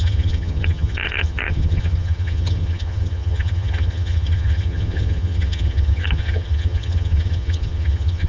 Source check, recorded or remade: remade